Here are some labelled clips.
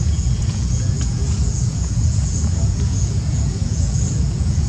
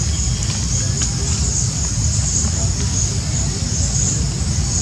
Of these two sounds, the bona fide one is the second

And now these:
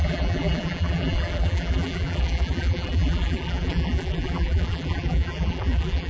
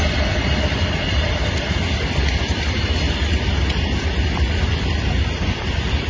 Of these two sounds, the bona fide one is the second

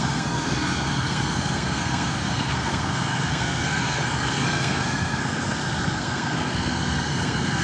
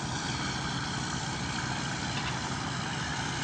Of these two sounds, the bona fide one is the second